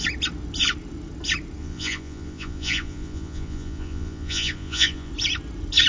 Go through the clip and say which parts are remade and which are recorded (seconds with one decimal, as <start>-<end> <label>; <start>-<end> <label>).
0.0-1.6 recorded; 1.6-5.1 remade; 5.1-5.9 recorded